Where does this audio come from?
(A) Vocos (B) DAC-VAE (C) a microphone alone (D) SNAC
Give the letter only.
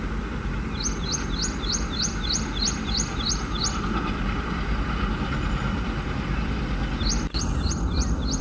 C